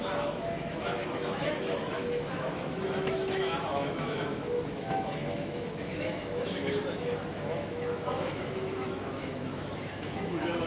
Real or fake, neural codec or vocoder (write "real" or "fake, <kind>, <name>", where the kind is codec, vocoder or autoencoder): fake, autoencoder, DAC-VAE